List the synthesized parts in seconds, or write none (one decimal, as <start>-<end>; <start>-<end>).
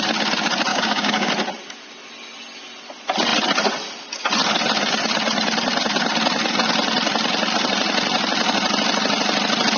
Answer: 0.7-1.3